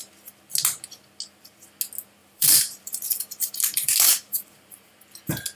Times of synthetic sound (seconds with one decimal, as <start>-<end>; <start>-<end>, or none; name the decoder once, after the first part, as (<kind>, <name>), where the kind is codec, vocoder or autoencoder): 2.2-4.9 (vocoder, BigVGAN v2)